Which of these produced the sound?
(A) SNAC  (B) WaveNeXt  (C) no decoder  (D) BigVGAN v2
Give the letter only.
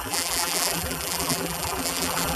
D